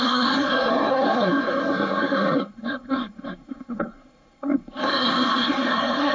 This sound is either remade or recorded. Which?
remade